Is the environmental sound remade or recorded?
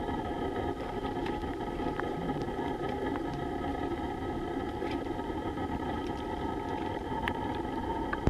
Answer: remade